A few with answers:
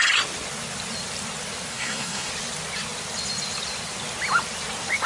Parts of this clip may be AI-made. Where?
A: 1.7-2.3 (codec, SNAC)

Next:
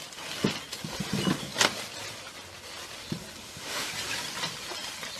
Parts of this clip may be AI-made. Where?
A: 3.4-3.9 (autoencoder, DAC-VAE)

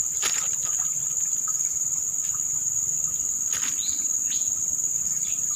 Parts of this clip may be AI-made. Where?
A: 0.0-1.1 (vocoder, BigVGAN v2); 4.0-5.6

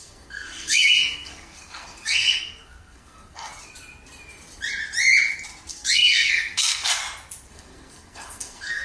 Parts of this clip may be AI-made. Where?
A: 0.0-3.5 (codec, SNAC); 5.7-7.0; 7.5-8.8

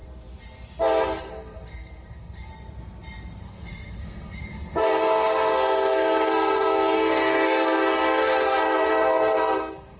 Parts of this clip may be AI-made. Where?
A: 1.2-2.5 (codec, SNAC); 3.4-10.0

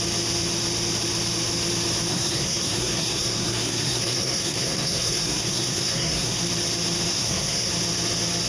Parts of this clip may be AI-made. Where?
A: 2.1-6.4 (codec, SNAC); 7.1-7.7

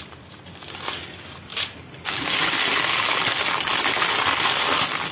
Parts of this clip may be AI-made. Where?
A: none